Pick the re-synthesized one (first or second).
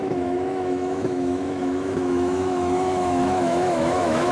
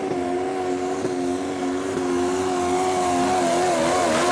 first